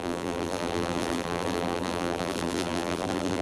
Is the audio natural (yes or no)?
no